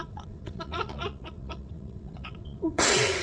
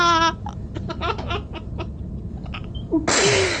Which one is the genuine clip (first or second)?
second